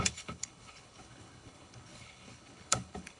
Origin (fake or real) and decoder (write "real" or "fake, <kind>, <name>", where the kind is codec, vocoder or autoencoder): fake, codec, HILCodec